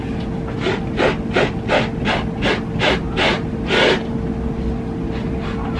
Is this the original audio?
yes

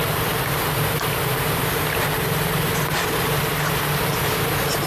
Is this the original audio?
yes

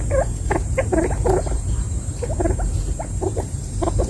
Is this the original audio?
no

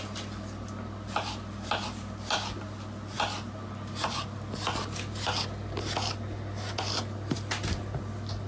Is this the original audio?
yes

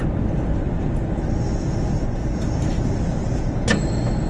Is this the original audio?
yes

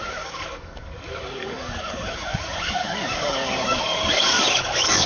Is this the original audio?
no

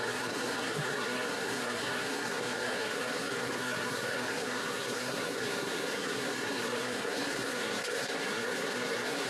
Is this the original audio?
no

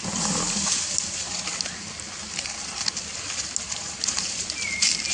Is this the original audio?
yes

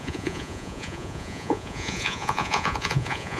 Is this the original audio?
no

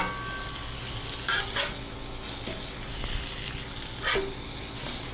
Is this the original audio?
yes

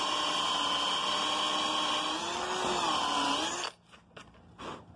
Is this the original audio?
yes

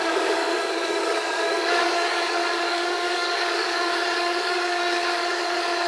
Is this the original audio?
no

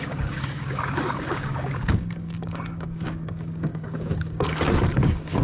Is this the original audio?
no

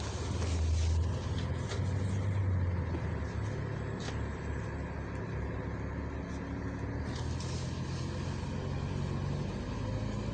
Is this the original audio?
yes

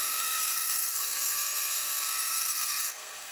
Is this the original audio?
no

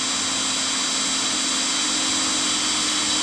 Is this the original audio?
yes